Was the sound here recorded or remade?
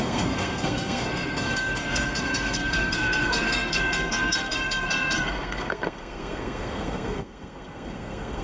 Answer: remade